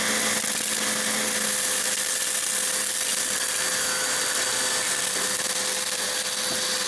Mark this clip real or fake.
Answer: real